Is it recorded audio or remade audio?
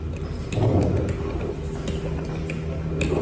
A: recorded